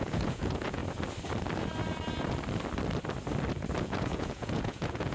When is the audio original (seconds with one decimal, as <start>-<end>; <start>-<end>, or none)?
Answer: 0.8-3.8